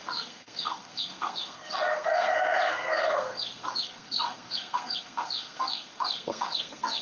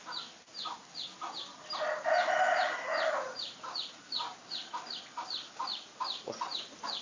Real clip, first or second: second